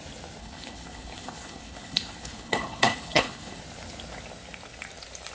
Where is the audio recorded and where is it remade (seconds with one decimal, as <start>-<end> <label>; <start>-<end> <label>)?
0.0-0.4 recorded; 0.4-3.6 remade; 3.6-5.3 recorded